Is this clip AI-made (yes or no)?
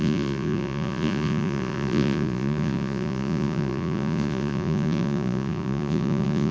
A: yes